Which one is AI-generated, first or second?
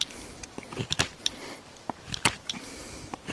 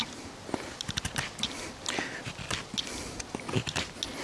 first